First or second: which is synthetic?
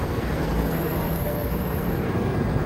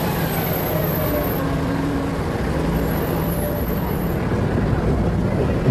first